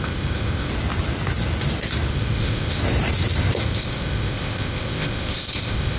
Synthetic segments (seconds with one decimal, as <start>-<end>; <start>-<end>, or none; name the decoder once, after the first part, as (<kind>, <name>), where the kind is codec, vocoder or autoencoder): 0.0-0.7 (codec, ZipCodec); 2.1-2.8; 3.6-6.0